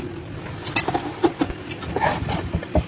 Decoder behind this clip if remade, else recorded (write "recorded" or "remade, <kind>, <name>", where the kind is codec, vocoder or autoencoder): recorded